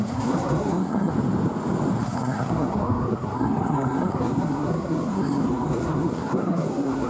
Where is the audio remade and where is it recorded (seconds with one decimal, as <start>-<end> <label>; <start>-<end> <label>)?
0.0-1.1 remade; 1.1-2.0 recorded; 2.0-7.1 remade